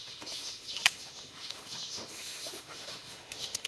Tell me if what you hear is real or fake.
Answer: fake